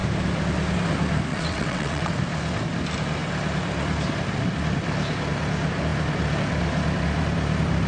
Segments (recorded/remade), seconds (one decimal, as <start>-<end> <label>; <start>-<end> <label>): 0.0-1.3 recorded; 1.3-2.1 remade; 2.1-7.9 recorded